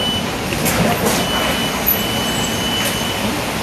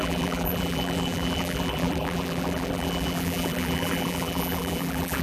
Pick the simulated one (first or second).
second